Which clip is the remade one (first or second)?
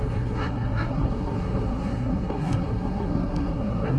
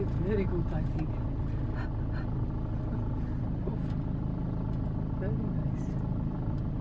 first